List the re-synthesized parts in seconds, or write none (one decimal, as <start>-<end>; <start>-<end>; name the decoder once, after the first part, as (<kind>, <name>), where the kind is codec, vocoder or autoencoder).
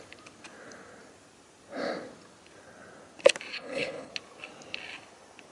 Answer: 3.5-4.1 (codec, HILCodec)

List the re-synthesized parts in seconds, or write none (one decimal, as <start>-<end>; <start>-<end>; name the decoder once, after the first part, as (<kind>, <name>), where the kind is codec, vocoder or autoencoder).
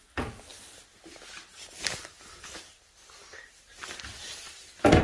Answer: none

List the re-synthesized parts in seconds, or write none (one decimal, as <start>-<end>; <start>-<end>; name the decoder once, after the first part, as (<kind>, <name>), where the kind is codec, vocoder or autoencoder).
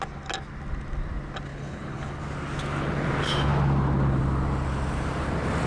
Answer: 1.5-2.2 (codec, HILCodec)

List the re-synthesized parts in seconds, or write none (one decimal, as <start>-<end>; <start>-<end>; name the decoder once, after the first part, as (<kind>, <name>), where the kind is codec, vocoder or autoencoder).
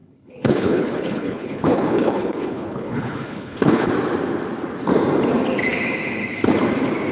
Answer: 0.0-3.9 (codec, HILCodec)